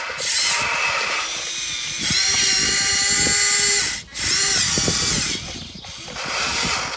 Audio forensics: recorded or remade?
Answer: recorded